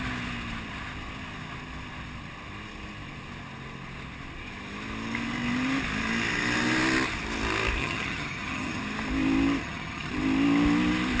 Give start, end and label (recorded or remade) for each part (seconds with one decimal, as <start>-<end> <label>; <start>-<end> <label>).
0.0-7.8 recorded; 7.8-8.8 remade; 8.8-9.6 recorded; 9.6-10.1 remade; 10.1-11.2 recorded